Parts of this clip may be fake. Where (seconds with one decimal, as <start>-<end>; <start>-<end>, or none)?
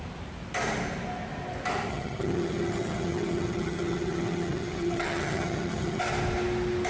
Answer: 1.9-6.0